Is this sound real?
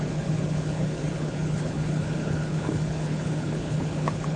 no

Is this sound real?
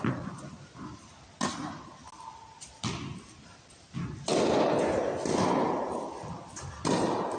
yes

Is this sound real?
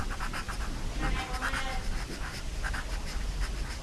yes